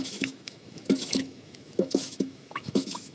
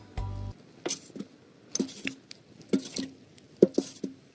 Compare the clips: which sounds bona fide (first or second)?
second